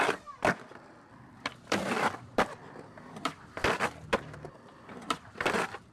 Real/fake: fake